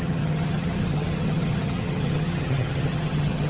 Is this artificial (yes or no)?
yes